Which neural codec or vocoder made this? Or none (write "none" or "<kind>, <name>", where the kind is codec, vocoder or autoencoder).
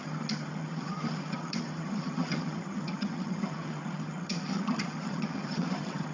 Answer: vocoder, HiFi-GAN